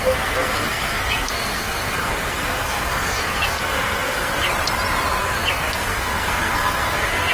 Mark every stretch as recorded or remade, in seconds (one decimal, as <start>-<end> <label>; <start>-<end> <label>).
0.0-4.5 remade; 4.5-5.2 recorded; 5.2-7.3 remade